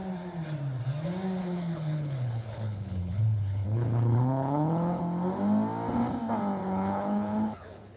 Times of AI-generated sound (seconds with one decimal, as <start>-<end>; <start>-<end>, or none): 1.4-5.0; 6.6-8.0